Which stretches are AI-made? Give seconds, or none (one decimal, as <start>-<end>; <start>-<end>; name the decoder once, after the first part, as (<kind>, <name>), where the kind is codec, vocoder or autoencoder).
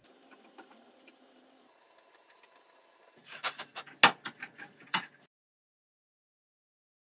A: 0.0-3.7 (vocoder, BigVGAN v2); 4.7-7.1